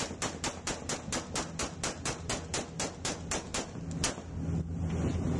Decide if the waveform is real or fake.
real